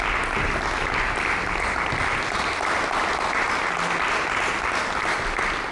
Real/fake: real